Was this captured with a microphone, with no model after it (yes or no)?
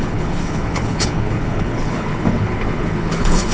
no